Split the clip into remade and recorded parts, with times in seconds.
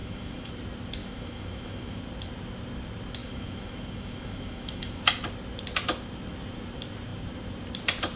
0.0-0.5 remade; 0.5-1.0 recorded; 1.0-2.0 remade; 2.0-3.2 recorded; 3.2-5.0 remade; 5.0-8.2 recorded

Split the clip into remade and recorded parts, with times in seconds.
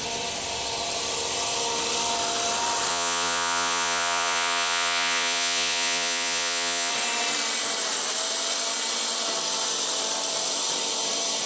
0.0-2.9 recorded; 2.9-6.9 remade; 6.9-11.5 recorded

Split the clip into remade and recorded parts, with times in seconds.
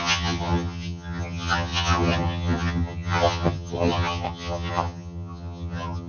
0.0-6.1 remade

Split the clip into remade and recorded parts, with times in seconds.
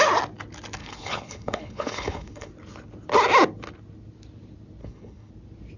0.0-0.8 recorded; 0.8-2.5 remade; 2.5-4.8 recorded; 4.8-5.3 remade; 5.3-5.8 recorded